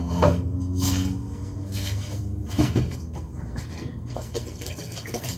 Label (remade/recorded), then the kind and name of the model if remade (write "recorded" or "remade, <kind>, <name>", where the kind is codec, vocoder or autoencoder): remade, codec, SNAC